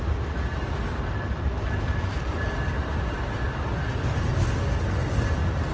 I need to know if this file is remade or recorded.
recorded